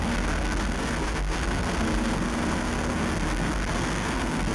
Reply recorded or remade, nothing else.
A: remade